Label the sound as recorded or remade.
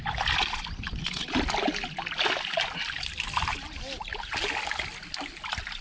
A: recorded